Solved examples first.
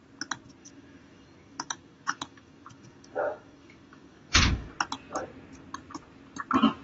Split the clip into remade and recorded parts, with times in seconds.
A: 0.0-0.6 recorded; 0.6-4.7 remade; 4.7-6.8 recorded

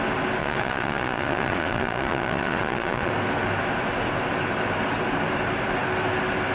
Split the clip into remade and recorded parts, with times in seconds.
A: 0.0-0.4 recorded; 0.4-3.1 remade; 3.1-6.5 recorded

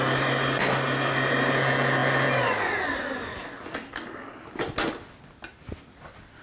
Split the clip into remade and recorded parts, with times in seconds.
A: 0.0-6.4 recorded